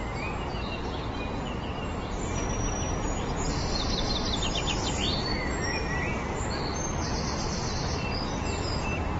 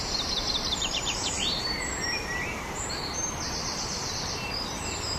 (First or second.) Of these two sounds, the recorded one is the first